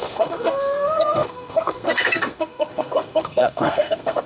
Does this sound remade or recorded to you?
remade